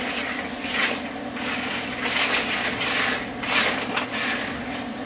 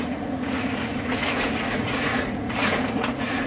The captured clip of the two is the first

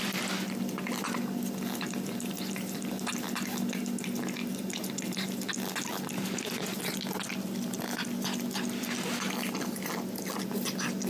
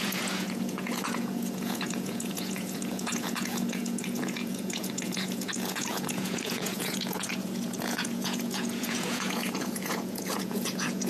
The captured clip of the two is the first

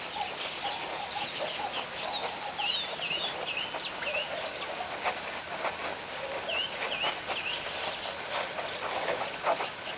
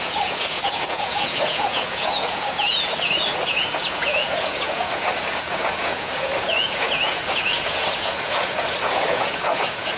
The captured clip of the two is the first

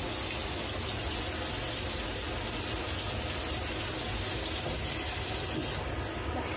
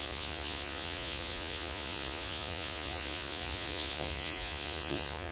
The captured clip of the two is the first